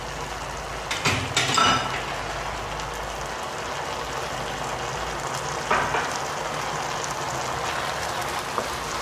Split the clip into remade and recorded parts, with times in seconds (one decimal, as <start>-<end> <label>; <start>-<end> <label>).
0.0-9.0 recorded